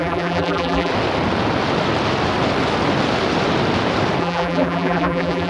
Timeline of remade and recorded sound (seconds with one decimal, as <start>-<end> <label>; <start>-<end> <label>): 0.0-0.9 remade; 0.9-4.2 recorded; 4.2-5.5 remade